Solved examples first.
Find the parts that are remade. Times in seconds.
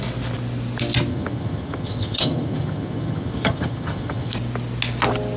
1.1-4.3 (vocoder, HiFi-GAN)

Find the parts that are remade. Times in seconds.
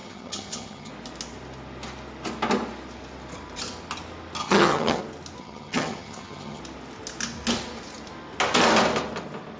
0.0-0.9 (vocoder, HiFi-GAN); 4.4-5.0; 5.4-6.6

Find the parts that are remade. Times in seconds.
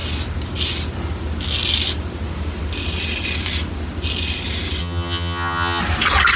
4.8-5.8 (vocoder, HiFi-GAN)